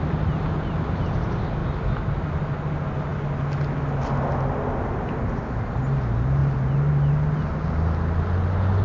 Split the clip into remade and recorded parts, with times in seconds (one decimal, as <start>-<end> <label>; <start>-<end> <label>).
0.0-8.8 recorded